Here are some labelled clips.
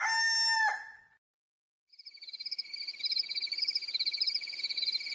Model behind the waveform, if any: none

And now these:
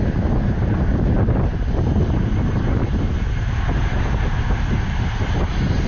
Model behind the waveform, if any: none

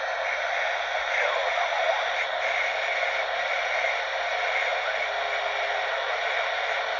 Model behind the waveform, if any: none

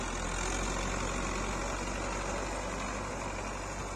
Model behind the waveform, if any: none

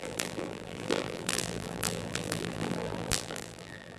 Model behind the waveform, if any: vocoder, BigVGAN v2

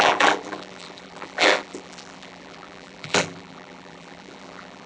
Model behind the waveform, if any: vocoder, BigVGAN v2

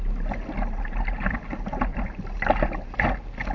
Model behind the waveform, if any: none